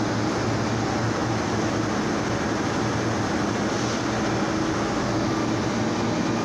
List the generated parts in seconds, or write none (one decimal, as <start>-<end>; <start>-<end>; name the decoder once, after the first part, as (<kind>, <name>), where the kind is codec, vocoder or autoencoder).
none